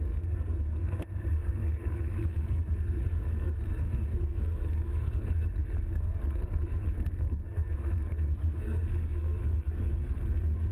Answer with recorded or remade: remade